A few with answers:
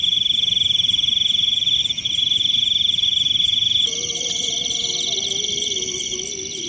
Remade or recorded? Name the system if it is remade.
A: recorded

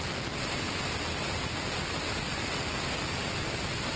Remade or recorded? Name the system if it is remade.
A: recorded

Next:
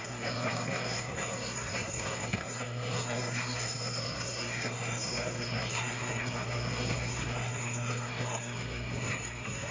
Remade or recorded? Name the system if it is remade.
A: remade, codec, SNAC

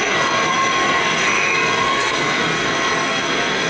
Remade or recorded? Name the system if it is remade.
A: remade, codec, SNAC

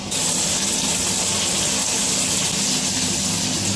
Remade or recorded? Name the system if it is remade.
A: recorded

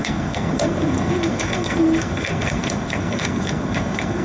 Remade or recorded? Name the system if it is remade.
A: remade, codec, SNAC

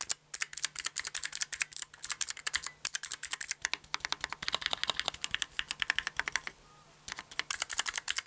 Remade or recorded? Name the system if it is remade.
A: recorded